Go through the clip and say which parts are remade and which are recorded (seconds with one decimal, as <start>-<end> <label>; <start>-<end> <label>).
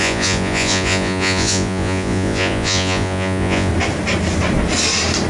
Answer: 0.0-3.7 remade; 3.7-5.3 recorded